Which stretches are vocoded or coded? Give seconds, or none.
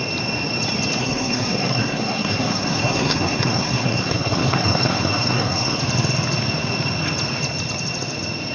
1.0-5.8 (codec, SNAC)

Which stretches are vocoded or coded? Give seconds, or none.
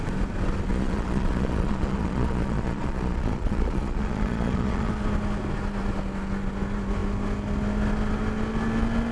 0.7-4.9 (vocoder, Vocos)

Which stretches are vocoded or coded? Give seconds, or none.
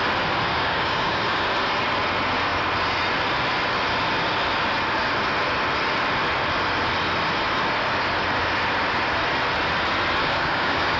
0.5-1.4 (codec, DAC); 10.2-11.0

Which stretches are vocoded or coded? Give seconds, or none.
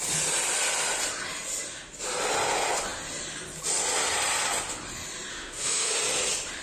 5.3-5.9 (autoencoder, DAC-VAE)